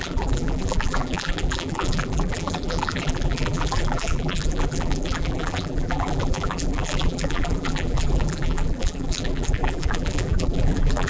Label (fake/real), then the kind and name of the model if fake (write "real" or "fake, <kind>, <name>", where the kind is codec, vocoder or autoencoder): fake, vocoder, BigVGAN v2